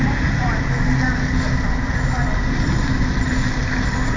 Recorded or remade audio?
recorded